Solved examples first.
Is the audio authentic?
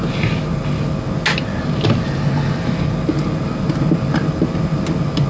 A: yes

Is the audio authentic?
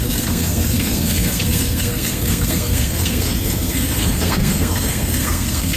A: no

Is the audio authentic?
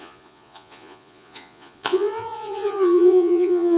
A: no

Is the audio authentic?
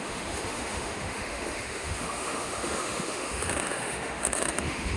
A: no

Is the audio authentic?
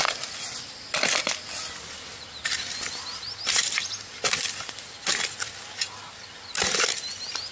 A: yes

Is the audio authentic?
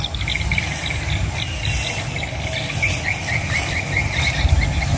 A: yes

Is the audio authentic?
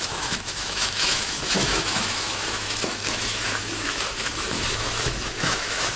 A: no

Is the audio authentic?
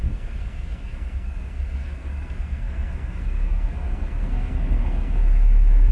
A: no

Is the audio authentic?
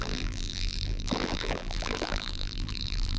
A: no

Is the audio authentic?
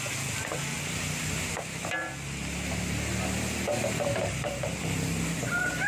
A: yes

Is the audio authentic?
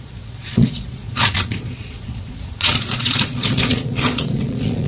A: no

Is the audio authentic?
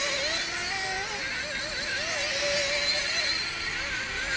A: yes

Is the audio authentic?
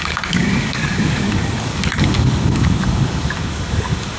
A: no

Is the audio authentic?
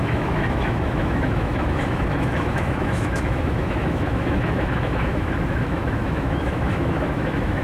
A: no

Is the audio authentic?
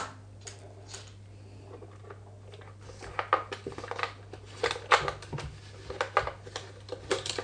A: yes